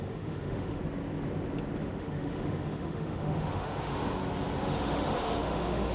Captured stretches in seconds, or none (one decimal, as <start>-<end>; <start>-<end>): 0.8-1.8; 4.0-4.6